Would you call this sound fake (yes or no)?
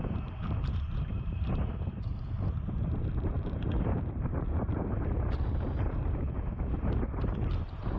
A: yes